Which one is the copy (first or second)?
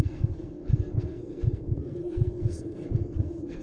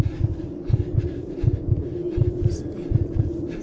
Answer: first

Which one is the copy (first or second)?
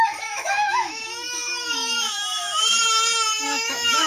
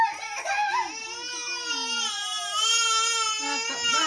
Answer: first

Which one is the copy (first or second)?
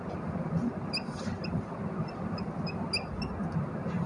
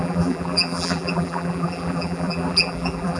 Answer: second